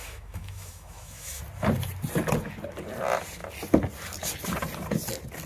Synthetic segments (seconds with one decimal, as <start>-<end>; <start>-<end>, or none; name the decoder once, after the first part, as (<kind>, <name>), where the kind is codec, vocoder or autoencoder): 0.0-1.4 (autoencoder, DAC-VAE)